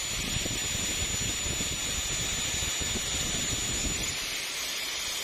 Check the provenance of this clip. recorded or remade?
recorded